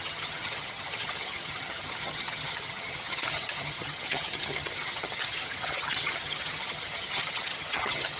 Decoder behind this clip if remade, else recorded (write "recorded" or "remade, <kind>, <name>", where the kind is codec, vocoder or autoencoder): remade, vocoder, HiFi-GAN